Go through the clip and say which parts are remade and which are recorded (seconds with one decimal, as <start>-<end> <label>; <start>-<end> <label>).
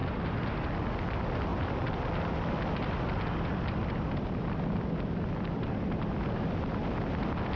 0.0-7.6 recorded